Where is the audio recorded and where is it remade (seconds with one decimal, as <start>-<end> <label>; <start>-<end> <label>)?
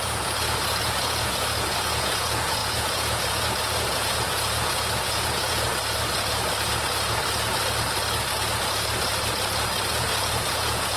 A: 0.0-5.7 remade; 5.7-9.9 recorded; 9.9-11.0 remade